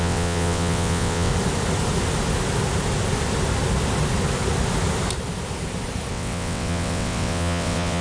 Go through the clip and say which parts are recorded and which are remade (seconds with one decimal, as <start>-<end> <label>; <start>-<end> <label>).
0.0-1.3 remade; 1.3-6.1 recorded; 6.1-8.0 remade